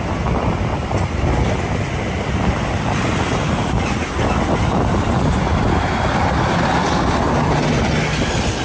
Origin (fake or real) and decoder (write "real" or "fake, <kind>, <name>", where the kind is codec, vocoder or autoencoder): real